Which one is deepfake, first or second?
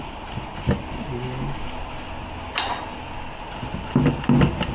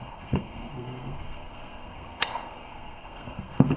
second